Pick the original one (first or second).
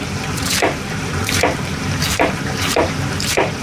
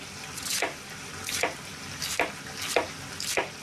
second